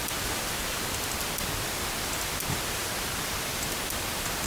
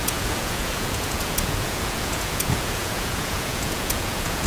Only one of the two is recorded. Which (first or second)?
first